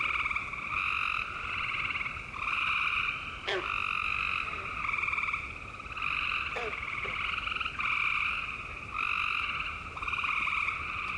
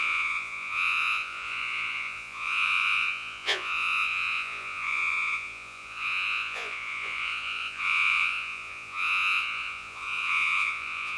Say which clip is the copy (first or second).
second